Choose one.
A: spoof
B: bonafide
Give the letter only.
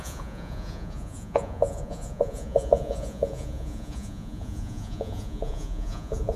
A